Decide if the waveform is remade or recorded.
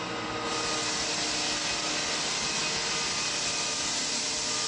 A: recorded